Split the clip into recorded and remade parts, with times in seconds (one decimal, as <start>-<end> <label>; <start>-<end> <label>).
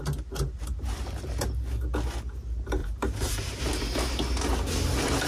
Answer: 0.0-2.8 recorded; 2.8-3.6 remade; 3.6-5.3 recorded